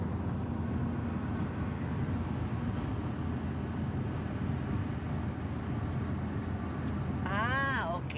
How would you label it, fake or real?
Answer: real